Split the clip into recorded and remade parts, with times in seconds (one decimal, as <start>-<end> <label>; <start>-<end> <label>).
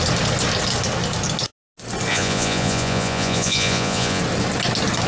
0.0-2.1 recorded; 2.1-4.2 remade; 4.2-5.1 recorded